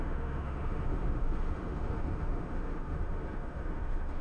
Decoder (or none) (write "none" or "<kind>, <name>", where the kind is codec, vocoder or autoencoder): autoencoder, DAC-VAE